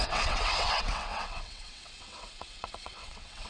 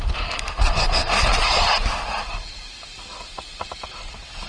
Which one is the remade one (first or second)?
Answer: first